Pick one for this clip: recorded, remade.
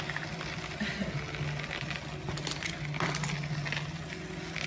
recorded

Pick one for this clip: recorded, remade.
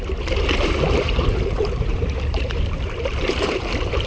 remade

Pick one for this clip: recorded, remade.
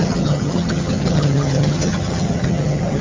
remade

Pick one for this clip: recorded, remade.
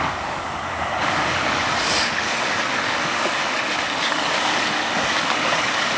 remade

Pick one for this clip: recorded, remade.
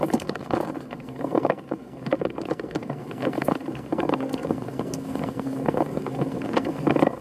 remade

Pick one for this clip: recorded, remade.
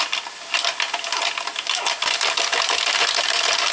recorded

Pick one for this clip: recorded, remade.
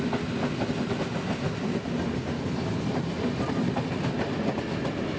recorded